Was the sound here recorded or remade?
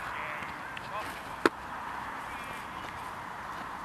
recorded